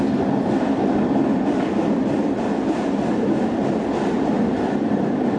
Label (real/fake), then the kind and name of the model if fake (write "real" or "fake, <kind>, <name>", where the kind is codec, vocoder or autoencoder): real